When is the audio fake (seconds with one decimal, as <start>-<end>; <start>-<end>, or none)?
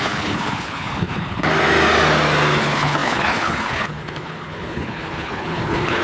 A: 0.0-1.5; 2.6-6.0